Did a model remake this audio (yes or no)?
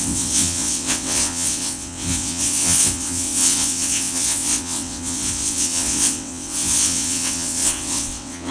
yes